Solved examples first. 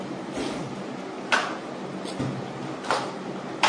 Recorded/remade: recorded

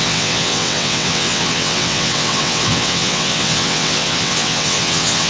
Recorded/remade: remade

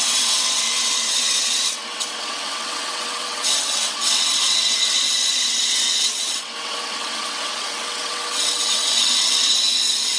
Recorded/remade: remade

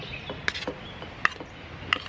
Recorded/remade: recorded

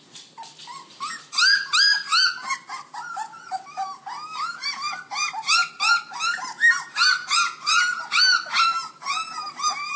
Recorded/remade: recorded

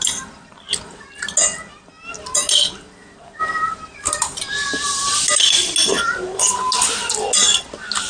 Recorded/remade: recorded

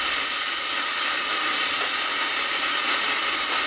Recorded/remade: recorded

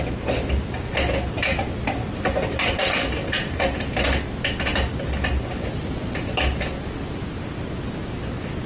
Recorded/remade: recorded